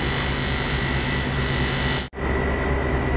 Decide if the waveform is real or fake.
real